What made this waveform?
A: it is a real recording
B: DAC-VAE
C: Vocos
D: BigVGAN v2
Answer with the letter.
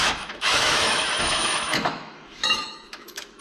B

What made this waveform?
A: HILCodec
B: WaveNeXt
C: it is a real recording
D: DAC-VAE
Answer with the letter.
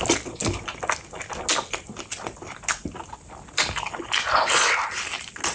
C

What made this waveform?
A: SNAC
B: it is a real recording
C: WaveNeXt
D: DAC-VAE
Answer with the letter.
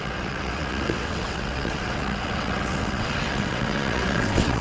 C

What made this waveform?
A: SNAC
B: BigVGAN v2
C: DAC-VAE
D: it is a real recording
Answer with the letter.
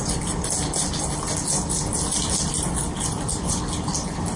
D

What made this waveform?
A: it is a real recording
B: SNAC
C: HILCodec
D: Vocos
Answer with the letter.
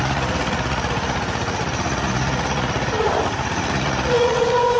D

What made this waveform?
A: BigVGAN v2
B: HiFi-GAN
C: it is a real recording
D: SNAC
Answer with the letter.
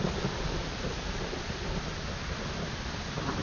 C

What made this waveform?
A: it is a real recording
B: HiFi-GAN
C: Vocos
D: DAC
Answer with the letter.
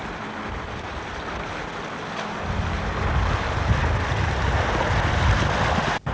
A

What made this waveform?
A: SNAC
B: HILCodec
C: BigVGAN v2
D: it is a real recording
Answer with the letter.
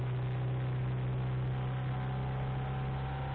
D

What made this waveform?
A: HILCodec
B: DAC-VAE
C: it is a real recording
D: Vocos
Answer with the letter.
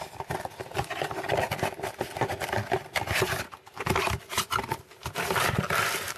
C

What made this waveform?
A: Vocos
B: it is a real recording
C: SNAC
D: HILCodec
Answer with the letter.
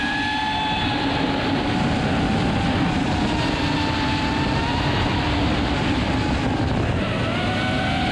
B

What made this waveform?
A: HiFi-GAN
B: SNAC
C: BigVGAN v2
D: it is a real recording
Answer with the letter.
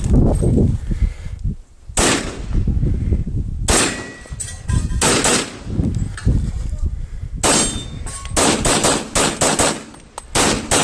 D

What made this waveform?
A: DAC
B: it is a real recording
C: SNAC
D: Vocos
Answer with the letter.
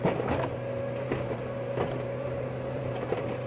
B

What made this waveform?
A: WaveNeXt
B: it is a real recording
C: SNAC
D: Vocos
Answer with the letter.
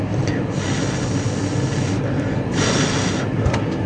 B